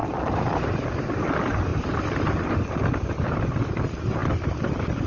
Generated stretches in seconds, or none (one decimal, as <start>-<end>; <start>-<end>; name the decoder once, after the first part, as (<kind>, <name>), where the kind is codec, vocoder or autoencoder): 0.0-0.9 (vocoder, BigVGAN v2); 1.7-2.6; 4.2-5.1